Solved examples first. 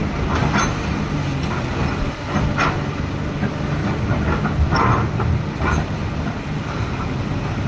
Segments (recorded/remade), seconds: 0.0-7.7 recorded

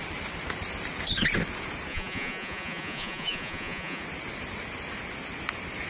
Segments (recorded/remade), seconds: 0.0-1.9 recorded; 1.9-4.0 remade; 4.0-5.9 recorded

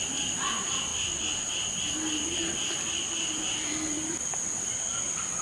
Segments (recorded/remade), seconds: 0.0-5.4 recorded

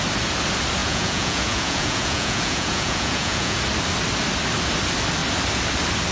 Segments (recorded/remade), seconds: 0.0-0.8 recorded; 0.8-3.6 remade; 3.6-6.1 recorded

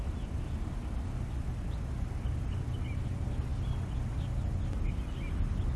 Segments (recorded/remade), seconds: 0.0-5.8 recorded

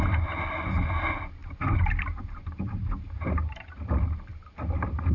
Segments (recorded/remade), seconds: 0.0-5.1 recorded